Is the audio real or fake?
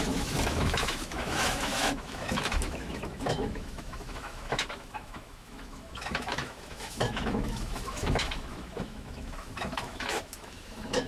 fake